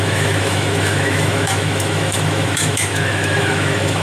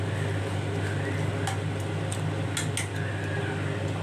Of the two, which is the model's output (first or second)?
first